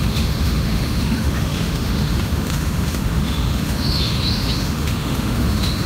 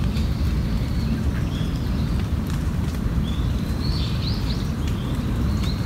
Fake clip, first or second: first